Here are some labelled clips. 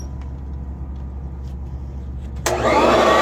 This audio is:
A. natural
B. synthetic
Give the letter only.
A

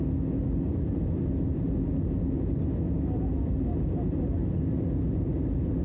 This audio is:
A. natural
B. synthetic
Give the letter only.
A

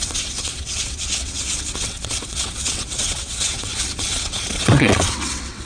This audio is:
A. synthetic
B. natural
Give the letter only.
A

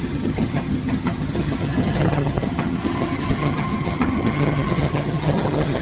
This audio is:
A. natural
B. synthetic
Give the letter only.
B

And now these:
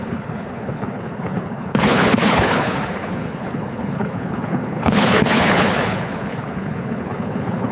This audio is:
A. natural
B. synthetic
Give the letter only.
B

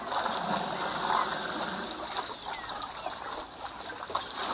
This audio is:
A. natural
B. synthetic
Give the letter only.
A